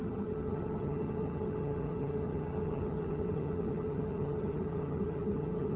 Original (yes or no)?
no